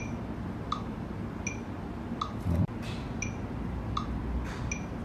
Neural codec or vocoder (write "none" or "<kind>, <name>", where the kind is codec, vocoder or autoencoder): none